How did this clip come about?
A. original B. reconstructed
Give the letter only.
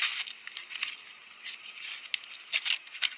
A